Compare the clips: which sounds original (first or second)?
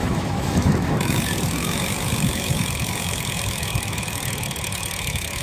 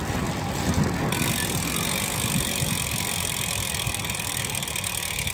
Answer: second